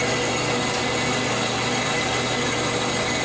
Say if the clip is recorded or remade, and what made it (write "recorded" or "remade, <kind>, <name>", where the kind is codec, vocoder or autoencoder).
recorded